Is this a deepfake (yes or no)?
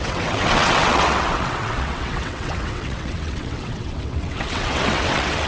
yes